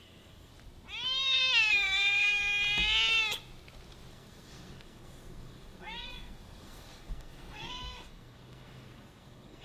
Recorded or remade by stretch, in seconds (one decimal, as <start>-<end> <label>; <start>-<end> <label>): 0.0-0.5 remade; 0.5-1.7 recorded; 1.7-2.4 remade; 2.4-4.1 recorded; 4.1-9.6 remade